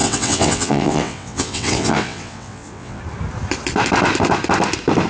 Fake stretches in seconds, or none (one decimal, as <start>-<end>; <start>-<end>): 0.0-3.0